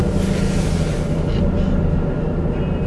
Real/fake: real